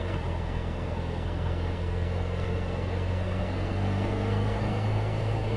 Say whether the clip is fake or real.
fake